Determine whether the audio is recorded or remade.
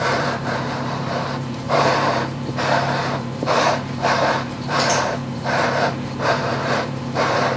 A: remade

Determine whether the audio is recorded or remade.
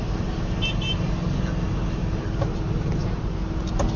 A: recorded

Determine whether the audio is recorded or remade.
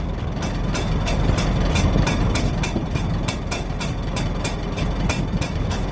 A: recorded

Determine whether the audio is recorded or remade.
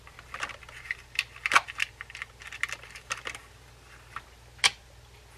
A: recorded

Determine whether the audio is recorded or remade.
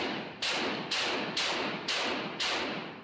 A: recorded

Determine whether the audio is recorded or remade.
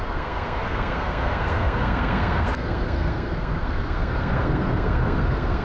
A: remade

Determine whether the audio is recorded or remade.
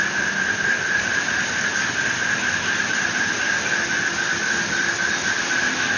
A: recorded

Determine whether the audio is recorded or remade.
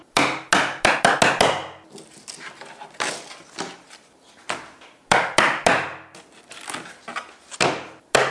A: recorded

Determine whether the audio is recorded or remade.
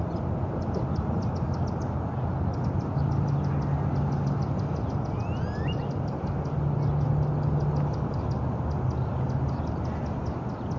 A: recorded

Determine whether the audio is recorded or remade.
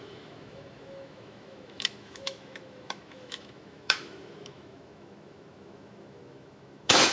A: remade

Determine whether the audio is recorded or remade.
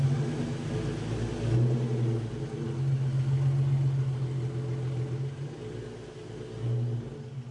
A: recorded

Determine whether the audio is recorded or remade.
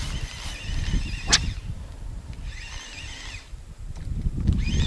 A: recorded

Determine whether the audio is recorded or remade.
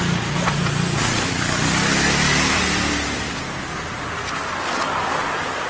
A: recorded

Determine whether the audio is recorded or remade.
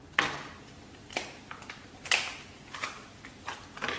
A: recorded